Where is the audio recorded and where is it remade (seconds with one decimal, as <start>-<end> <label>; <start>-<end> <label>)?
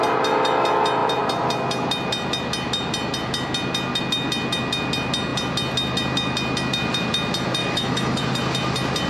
0.0-7.6 recorded; 7.6-8.2 remade; 8.2-9.1 recorded